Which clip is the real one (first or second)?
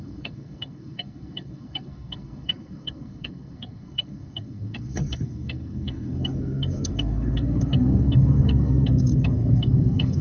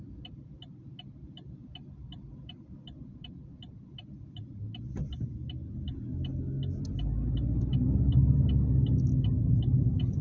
second